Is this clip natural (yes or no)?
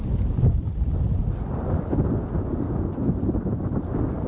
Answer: yes